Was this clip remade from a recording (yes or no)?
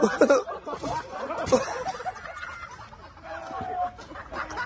no